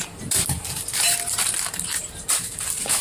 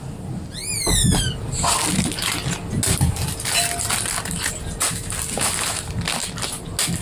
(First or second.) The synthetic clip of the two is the first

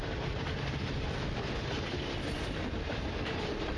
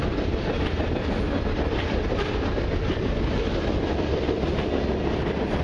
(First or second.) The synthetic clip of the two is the first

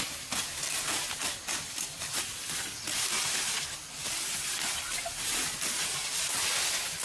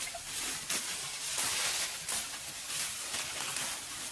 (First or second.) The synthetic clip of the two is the second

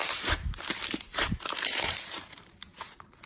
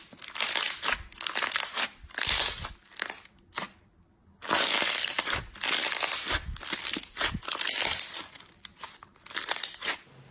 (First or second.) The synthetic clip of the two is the first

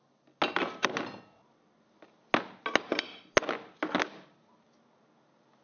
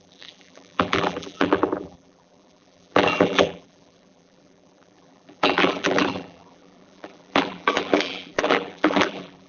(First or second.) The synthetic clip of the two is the second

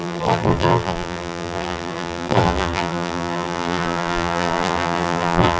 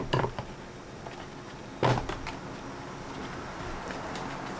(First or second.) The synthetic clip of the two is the first